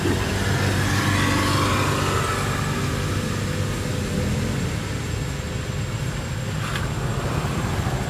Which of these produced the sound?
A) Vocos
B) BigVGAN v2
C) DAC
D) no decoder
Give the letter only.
D